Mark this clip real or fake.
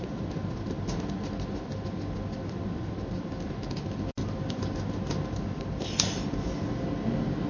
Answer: real